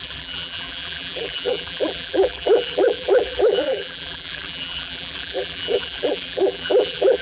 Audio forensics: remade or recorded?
remade